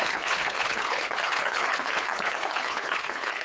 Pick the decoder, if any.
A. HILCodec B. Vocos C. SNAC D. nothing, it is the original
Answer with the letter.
A